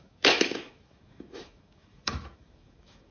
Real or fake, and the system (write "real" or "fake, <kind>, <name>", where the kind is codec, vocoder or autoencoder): fake, autoencoder, DAC-VAE